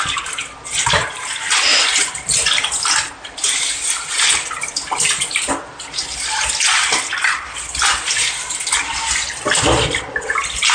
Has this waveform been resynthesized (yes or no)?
no